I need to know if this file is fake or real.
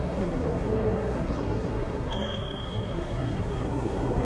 fake